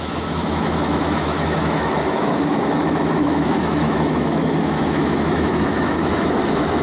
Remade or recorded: remade